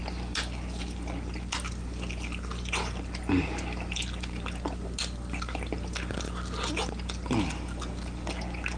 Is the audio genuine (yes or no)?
yes